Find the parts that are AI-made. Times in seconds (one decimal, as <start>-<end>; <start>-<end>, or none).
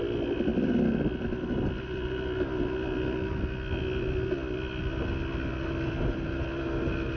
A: none